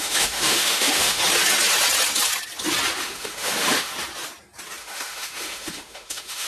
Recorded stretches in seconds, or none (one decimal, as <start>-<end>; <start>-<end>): 1.2-3.0; 3.9-4.8